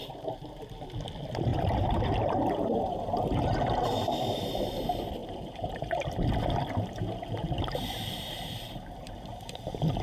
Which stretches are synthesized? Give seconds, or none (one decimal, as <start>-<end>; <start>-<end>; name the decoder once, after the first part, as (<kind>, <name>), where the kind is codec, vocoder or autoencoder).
0.0-0.6 (vocoder, BigVGAN v2); 1.5-4.7; 5.2-9.6